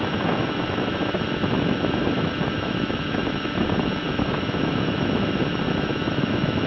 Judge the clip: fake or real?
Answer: fake